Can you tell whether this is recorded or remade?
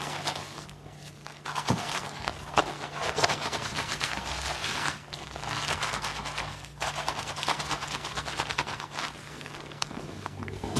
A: remade